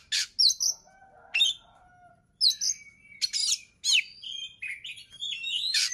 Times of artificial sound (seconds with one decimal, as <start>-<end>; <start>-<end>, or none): none

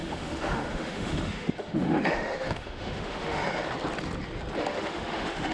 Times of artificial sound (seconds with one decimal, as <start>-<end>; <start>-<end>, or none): 0.0-3.4; 4.6-5.5

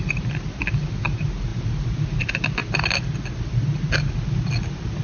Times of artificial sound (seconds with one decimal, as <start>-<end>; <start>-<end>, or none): none

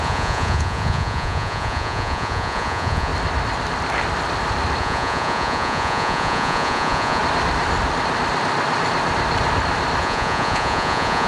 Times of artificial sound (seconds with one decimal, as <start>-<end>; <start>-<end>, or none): 0.0-3.1; 4.8-7.2; 10.0-11.3

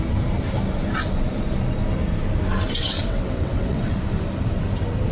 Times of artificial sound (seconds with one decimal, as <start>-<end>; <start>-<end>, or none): 2.8-3.9

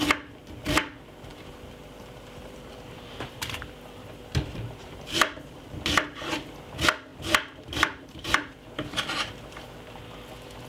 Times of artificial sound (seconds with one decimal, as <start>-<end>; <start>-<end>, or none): 1.3-5.7; 7.1-10.0

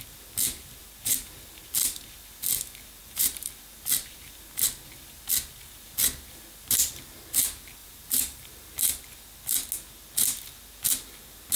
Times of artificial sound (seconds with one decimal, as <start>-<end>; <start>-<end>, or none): 3.0-3.5; 7.8-8.5